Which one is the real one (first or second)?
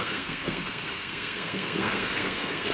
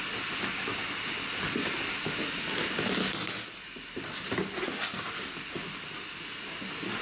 second